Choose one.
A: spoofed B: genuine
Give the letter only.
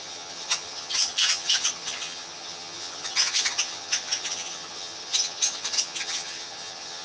A